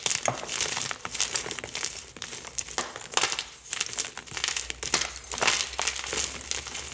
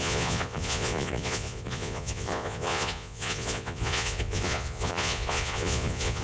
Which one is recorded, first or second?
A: first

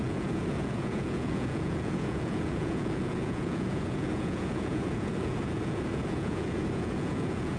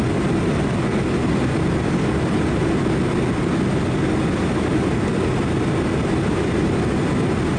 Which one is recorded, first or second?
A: second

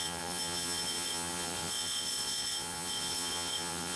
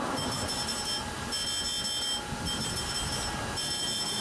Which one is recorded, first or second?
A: second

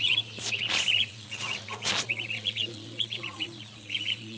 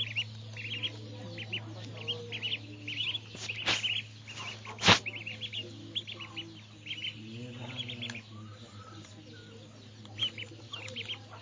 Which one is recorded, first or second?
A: second